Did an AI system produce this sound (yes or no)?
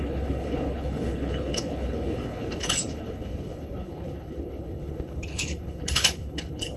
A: yes